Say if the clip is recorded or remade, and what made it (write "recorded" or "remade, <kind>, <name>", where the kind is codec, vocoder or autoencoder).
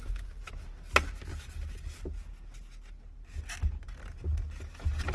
recorded